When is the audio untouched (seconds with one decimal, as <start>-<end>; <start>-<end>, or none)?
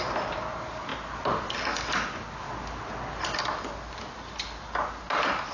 0.0-5.5